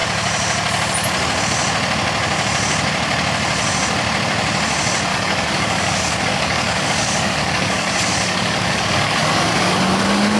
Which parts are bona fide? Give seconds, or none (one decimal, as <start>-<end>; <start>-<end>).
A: 0.0-5.1